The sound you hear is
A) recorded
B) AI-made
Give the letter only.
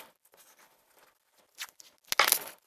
A